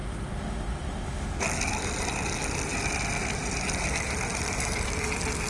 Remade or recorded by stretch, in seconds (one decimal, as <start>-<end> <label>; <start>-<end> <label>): 0.0-1.4 remade; 1.4-5.5 recorded